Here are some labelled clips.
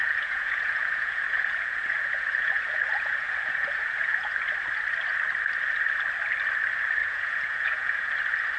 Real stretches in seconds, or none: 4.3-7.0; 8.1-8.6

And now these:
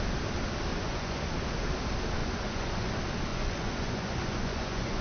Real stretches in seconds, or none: 0.0-0.7; 1.2-2.2; 2.9-3.3

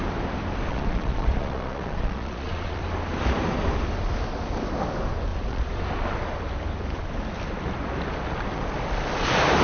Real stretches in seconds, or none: 0.0-0.7; 2.8-5.3; 5.8-9.6

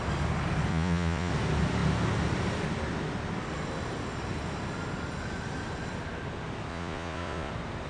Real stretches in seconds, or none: 0.0-0.7; 1.3-6.7; 7.5-7.9

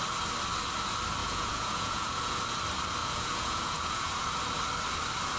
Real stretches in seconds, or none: 0.0-1.2; 2.3-3.0; 4.4-5.4

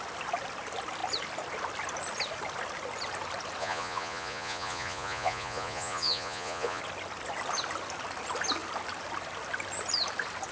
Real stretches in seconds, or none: 0.0-3.6; 6.8-10.5

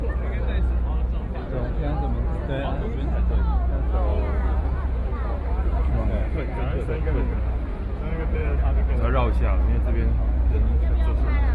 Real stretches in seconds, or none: 0.0-4.1; 8.7-10.2; 10.9-11.5

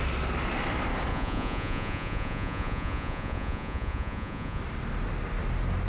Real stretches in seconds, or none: 0.0-1.1; 4.6-5.9